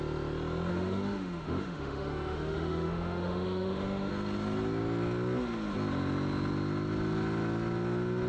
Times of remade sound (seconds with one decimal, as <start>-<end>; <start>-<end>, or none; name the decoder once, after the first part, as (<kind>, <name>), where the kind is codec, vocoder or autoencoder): 0.7-4.1 (autoencoder, DAC-VAE)